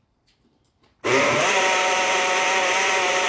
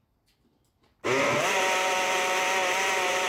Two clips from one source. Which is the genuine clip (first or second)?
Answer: second